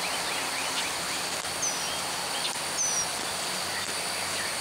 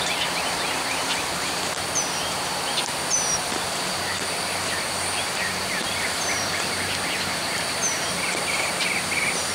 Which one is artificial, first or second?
second